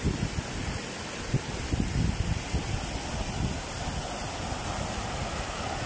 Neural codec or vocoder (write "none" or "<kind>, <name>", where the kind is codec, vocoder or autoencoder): none